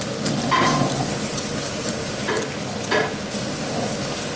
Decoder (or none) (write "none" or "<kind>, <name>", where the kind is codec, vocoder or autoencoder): none